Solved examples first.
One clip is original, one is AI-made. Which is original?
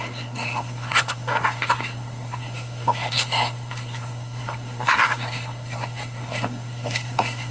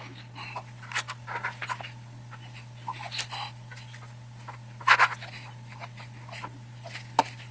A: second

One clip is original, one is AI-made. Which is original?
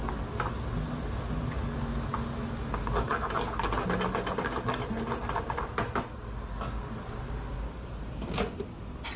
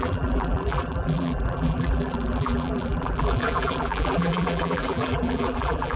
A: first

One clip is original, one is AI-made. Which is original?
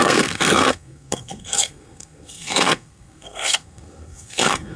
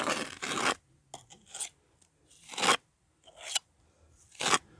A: second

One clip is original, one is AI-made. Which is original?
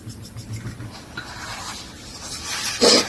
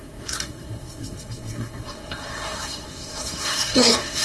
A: first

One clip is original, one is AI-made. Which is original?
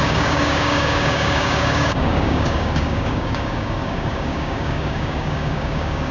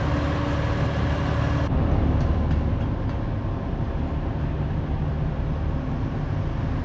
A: second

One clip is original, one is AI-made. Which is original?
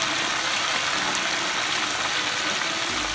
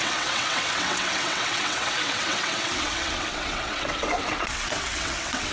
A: first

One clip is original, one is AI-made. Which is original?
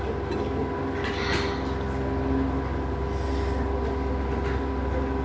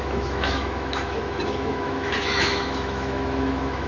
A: first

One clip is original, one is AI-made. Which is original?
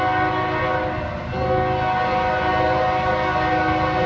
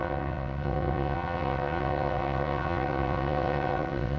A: first